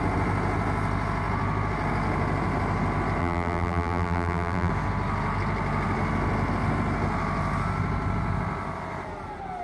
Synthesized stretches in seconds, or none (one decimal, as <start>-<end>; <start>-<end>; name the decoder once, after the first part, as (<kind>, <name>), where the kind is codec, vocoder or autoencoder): 3.2-4.7 (vocoder, BigVGAN v2)